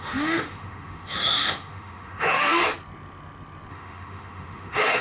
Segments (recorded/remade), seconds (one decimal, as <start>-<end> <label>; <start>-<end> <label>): 0.0-2.6 remade; 2.6-3.7 recorded; 3.7-5.0 remade